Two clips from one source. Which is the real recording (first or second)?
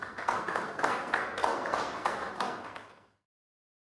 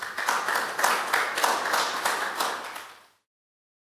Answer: second